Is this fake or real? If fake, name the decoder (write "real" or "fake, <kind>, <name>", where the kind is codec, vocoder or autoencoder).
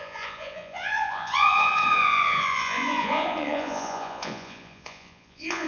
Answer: fake, vocoder, Vocos